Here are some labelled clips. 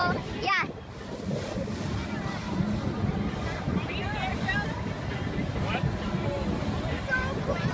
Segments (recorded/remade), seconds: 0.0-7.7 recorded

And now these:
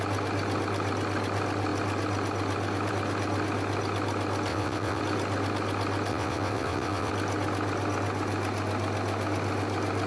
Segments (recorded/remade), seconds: 0.0-4.5 recorded; 4.5-5.0 remade; 5.0-6.1 recorded; 6.1-7.1 remade; 7.1-10.1 recorded

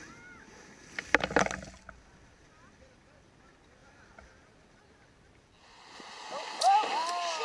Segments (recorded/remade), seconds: 0.0-7.4 recorded

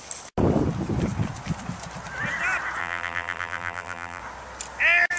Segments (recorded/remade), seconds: 0.0-2.8 recorded; 2.8-4.2 remade; 4.2-5.2 recorded